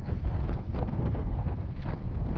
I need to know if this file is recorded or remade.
remade